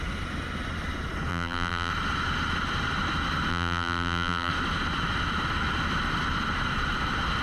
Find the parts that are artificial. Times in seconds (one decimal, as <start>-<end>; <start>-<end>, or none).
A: 1.3-1.9; 3.5-4.5